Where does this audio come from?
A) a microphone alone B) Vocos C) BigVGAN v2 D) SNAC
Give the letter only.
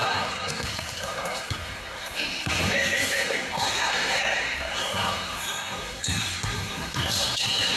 D